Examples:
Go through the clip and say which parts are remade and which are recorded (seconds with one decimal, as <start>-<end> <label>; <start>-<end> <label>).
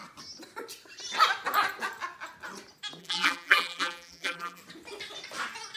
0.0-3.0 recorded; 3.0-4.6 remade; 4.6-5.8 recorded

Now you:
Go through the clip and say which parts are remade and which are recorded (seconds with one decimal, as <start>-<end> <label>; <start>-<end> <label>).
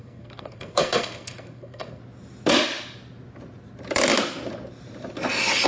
0.0-2.0 remade; 2.0-5.7 recorded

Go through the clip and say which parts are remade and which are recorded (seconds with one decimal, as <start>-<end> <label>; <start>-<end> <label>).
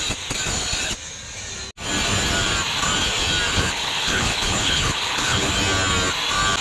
0.0-3.5 recorded; 3.5-5.5 remade; 5.5-6.6 recorded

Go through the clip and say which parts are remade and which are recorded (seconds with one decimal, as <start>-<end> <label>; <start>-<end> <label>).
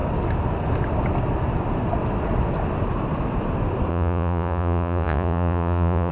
0.0-3.9 recorded; 3.9-6.1 remade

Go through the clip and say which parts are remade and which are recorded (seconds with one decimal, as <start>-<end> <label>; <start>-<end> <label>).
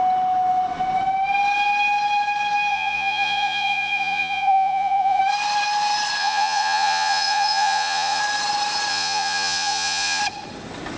0.0-2.7 recorded; 2.7-5.2 remade; 5.2-6.2 recorded; 6.2-8.2 remade; 8.2-8.9 recorded; 8.9-10.2 remade; 10.2-11.0 recorded